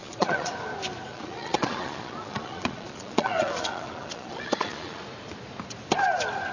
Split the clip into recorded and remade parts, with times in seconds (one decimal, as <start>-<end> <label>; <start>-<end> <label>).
0.0-0.5 remade; 0.5-1.1 recorded; 1.1-5.0 remade; 5.0-6.5 recorded